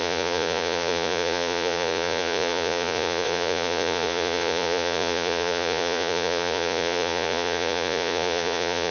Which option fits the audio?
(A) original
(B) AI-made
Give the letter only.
B